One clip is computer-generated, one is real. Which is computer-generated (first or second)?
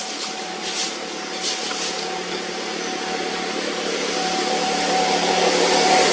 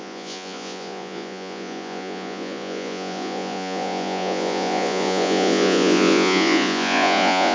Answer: second